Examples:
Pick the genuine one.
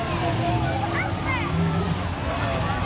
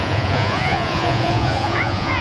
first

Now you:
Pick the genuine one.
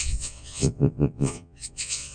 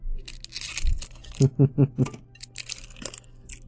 second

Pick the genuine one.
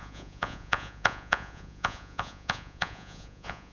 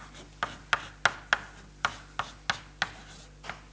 second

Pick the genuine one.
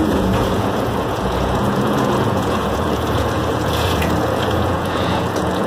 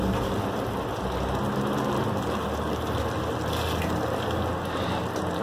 second